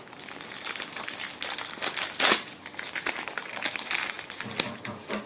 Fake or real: real